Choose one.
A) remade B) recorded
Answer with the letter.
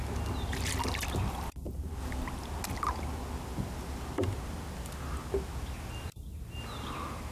B